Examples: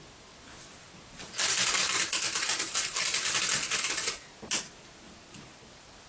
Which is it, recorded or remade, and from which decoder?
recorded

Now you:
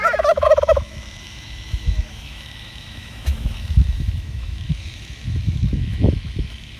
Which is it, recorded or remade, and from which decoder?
remade, autoencoder, DAC-VAE